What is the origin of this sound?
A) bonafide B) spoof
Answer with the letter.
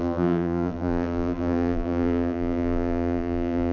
B